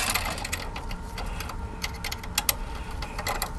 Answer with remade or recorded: recorded